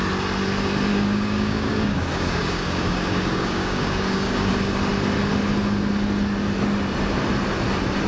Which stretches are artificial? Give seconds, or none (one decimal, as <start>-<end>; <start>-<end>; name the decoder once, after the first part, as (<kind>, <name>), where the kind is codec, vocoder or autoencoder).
0.9-4.5 (codec, DAC)